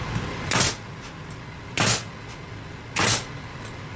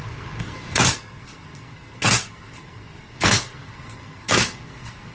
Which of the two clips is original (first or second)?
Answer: first